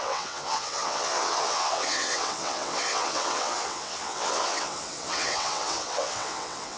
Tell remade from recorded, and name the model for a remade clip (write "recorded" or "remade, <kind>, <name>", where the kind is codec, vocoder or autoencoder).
remade, vocoder, WaveNeXt